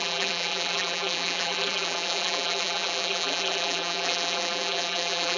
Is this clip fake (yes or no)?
yes